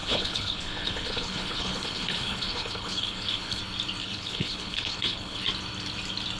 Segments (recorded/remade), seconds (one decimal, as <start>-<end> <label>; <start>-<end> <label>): 0.0-3.6 remade; 3.6-4.0 recorded; 4.0-5.4 remade; 5.4-6.4 recorded